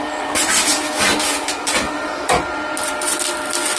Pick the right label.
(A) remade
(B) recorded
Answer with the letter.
B